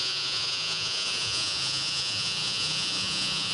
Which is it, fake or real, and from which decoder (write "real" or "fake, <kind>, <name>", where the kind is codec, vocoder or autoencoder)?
fake, vocoder, Vocos